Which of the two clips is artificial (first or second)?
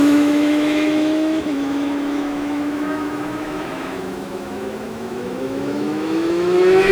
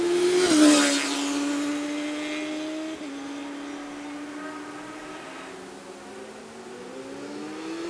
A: first